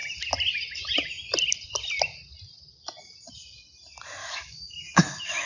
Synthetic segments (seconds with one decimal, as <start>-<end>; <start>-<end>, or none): 4.2-5.5